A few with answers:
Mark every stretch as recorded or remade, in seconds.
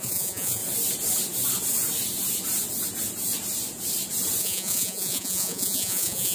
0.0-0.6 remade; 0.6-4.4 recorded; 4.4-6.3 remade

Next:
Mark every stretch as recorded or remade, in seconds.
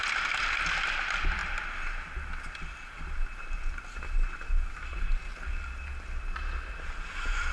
0.0-7.5 recorded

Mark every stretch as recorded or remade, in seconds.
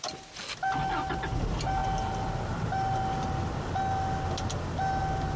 0.0-5.4 recorded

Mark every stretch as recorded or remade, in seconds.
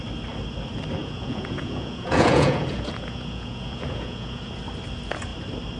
0.0-1.0 recorded; 1.0-4.5 remade; 4.5-5.8 recorded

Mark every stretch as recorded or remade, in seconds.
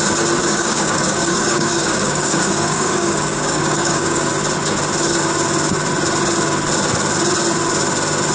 0.0-0.4 recorded; 0.4-4.3 remade; 4.3-8.3 recorded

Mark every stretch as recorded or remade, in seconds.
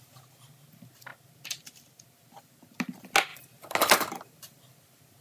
0.0-5.2 recorded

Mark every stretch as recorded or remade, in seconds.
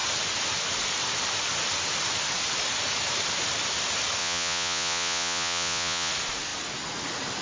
0.0-4.2 recorded; 4.2-6.1 remade; 6.1-7.4 recorded